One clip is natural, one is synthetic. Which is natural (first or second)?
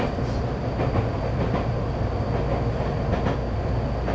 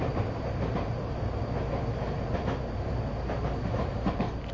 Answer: first